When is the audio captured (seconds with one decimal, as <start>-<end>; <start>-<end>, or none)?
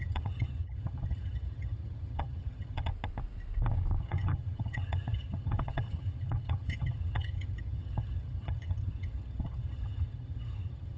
2.9-4.0